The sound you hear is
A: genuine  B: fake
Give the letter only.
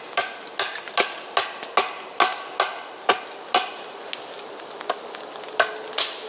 A